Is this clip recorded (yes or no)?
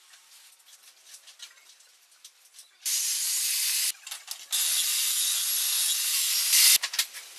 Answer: yes